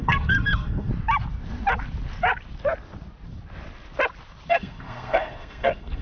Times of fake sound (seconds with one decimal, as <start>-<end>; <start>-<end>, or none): 0.0-0.9; 4.5-6.0